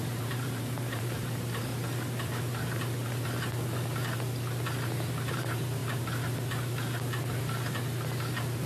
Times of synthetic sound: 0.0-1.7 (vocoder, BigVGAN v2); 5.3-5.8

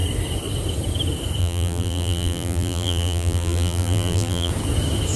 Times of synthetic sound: 1.4-4.5 (vocoder, BigVGAN v2)

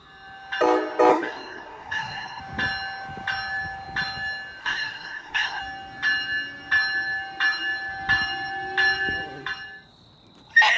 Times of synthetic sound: 1.1-2.4 (codec, SNAC); 4.6-5.6